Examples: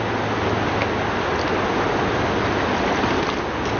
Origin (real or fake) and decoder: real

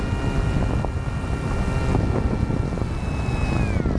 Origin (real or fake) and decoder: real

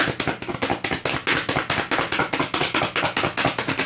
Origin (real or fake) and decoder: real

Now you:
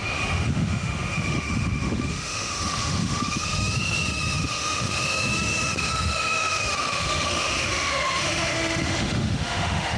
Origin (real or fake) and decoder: fake, autoencoder, DAC-VAE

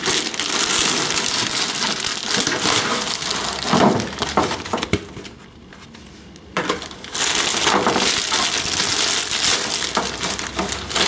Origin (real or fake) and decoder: real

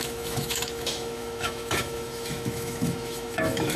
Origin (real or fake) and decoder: fake, autoencoder, DAC-VAE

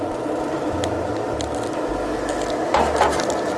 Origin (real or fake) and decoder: real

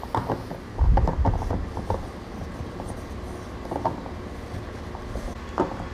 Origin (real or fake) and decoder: real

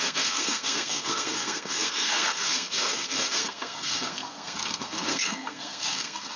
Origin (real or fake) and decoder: fake, codec, SNAC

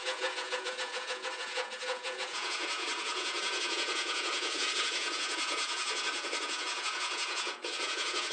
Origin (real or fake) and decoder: fake, vocoder, Vocos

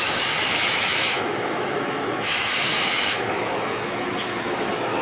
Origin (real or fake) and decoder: fake, autoencoder, DAC-VAE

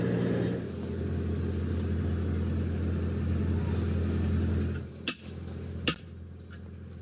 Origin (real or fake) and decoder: real